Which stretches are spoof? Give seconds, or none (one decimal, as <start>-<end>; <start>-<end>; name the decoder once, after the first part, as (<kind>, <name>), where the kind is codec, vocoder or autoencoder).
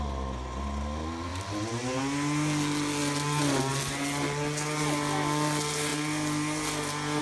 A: 1.3-2.0 (vocoder, BigVGAN v2)